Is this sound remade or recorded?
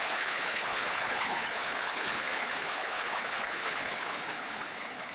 remade